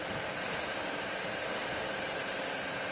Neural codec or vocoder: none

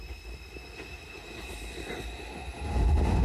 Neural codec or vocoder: none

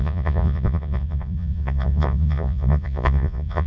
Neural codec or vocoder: vocoder, Vocos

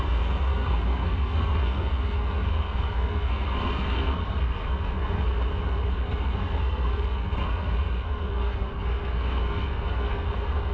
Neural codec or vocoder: codec, SNAC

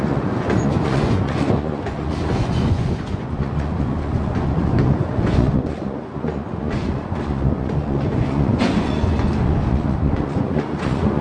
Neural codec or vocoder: vocoder, Vocos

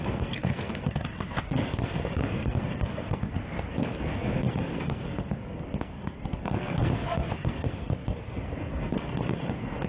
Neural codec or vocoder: codec, SNAC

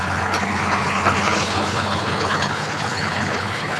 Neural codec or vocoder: codec, HILCodec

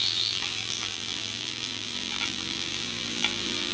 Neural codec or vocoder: vocoder, BigVGAN v2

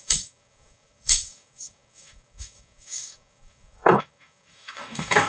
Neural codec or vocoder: codec, DAC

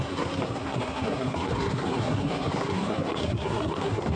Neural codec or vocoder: codec, SNAC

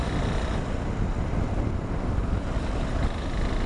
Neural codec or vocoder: none